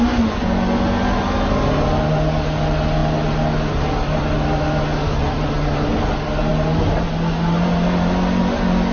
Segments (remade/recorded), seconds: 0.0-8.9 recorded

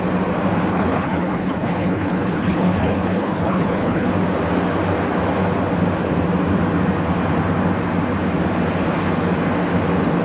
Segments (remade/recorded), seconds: 0.0-0.7 recorded; 0.7-4.1 remade; 4.1-10.2 recorded

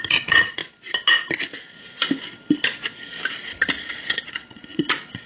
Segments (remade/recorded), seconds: 0.0-0.6 remade; 0.6-3.8 recorded; 3.8-5.3 remade

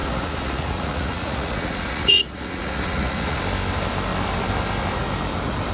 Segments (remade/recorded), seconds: 0.0-3.4 remade; 3.4-5.7 recorded

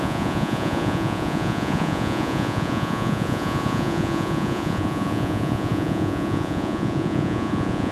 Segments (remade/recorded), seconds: 0.0-7.9 remade

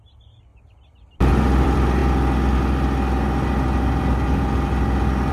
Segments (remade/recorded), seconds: 0.0-0.5 remade; 0.5-1.3 recorded; 1.3-2.0 remade; 2.0-5.3 recorded

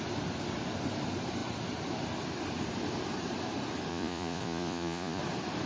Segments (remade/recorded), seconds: 0.0-3.9 recorded; 3.9-5.2 remade; 5.2-5.7 recorded

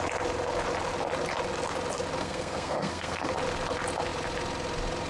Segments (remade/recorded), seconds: 0.0-2.2 recorded; 2.2-3.3 remade; 3.3-5.1 recorded